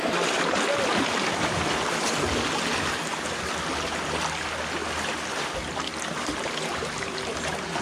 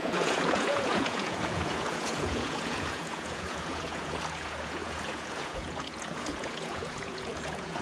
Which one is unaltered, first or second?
first